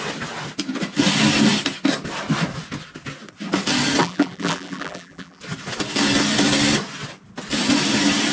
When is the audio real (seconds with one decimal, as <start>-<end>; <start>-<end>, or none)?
0.0-4.0; 5.4-8.3

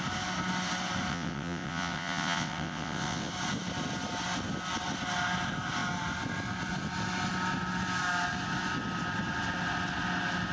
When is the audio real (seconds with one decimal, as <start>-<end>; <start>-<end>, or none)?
0.0-1.1; 3.3-10.5

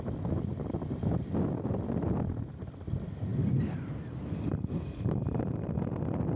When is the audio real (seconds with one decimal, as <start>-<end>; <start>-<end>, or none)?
0.0-6.4

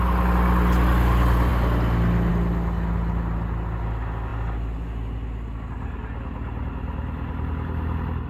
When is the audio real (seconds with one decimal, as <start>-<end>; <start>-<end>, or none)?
0.0-8.3

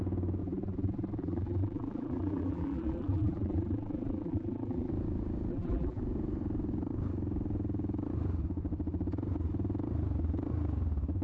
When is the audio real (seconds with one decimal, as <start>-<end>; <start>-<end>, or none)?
0.0-0.4; 4.9-5.5; 6.0-11.2

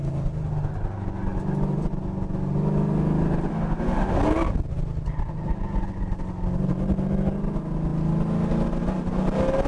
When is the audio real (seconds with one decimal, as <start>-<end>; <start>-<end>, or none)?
0.0-3.5; 4.2-9.7

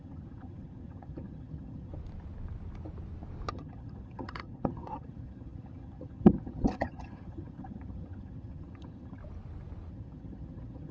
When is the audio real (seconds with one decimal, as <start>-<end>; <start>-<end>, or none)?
1.9-3.5; 9.2-9.9

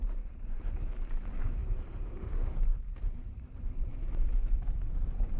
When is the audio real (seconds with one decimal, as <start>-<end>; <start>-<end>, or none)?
none